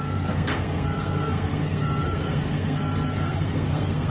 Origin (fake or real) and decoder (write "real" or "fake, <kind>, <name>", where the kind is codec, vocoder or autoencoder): fake, codec, SNAC